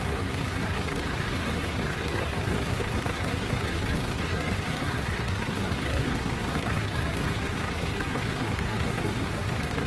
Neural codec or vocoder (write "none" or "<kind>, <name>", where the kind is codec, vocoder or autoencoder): codec, SNAC